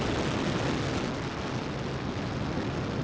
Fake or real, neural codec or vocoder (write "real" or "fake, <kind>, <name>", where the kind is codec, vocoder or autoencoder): real